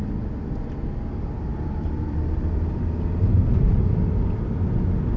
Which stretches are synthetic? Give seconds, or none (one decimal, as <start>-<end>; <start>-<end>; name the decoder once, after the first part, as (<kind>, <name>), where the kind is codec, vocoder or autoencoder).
1.5-2.8 (vocoder, BigVGAN v2)